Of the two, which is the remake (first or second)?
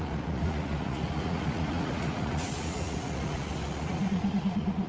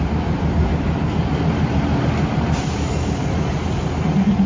first